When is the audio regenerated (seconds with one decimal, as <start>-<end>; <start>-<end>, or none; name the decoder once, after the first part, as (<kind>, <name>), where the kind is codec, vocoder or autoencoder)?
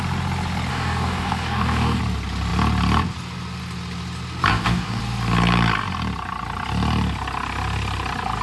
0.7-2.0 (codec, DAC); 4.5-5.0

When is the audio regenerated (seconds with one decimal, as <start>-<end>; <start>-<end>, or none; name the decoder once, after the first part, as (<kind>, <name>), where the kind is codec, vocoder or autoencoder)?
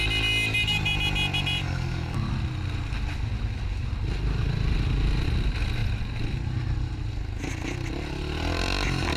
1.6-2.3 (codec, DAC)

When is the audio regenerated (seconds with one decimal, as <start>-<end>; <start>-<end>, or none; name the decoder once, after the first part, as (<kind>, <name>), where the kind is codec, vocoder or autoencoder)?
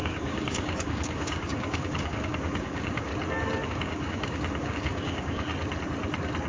0.0-3.1 (codec, DAC); 3.7-5.5